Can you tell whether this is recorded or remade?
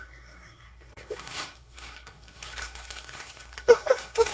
remade